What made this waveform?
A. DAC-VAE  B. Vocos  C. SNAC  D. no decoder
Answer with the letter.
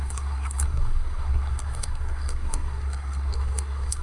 C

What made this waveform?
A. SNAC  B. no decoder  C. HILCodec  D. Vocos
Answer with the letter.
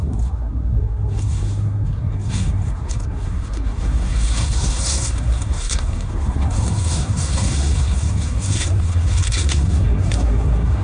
A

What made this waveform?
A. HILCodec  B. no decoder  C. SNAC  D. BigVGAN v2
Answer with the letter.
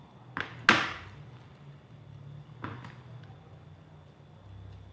B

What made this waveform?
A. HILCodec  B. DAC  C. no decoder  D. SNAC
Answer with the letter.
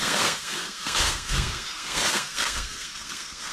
D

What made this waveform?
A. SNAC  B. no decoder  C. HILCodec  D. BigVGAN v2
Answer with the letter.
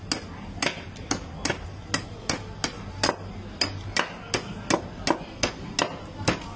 B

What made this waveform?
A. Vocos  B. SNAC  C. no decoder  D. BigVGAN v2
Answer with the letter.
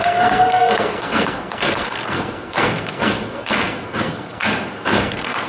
B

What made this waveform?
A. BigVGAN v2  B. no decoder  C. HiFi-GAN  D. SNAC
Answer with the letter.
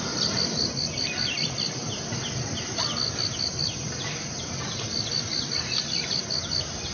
B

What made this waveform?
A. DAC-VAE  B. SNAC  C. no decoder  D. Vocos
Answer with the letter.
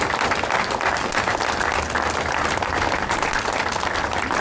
C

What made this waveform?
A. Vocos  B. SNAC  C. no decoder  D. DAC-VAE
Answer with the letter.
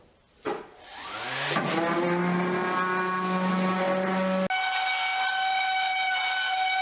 C